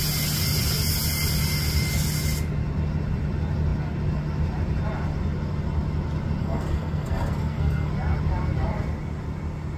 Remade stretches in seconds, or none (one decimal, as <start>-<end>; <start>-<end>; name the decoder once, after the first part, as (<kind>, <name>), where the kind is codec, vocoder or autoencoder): 6.4-7.9 (codec, SNAC)

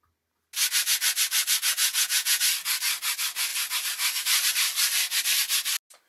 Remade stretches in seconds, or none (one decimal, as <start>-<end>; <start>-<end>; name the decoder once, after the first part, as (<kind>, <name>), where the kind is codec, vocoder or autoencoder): 1.8-2.4 (vocoder, Vocos)